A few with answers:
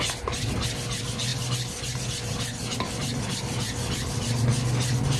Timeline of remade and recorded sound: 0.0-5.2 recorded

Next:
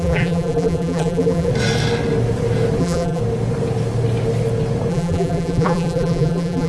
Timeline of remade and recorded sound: 0.0-1.5 remade; 1.5-2.8 recorded; 2.8-3.2 remade; 3.2-4.9 recorded; 4.9-6.7 remade

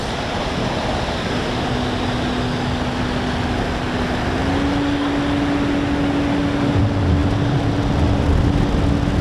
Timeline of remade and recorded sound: 0.0-9.2 recorded

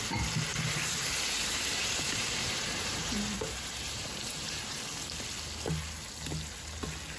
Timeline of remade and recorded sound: 0.0-0.5 recorded; 0.5-4.8 remade; 4.8-7.2 recorded

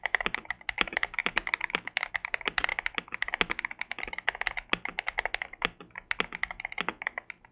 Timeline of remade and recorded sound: 0.0-1.2 remade; 1.2-2.1 recorded; 2.1-2.7 remade; 2.7-7.0 recorded; 7.0-7.5 remade

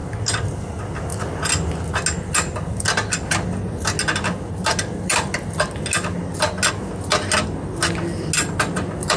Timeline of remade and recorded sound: 0.0-9.2 recorded

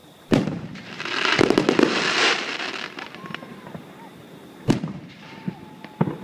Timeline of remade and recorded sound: 0.0-0.9 remade; 0.9-2.2 recorded; 2.2-3.0 remade; 3.0-3.5 recorded; 3.5-5.7 remade; 5.7-6.2 recorded

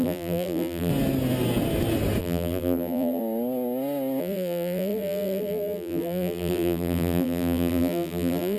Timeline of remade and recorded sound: 0.0-0.9 remade; 0.9-2.2 recorded; 2.2-3.2 remade; 3.2-4.2 recorded; 4.2-8.6 remade